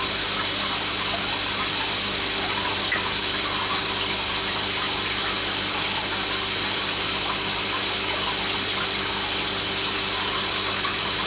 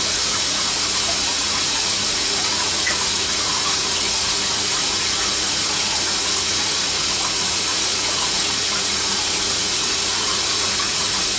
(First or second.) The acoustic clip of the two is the first